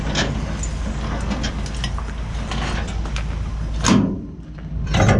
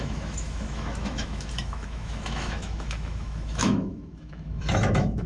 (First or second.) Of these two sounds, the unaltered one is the first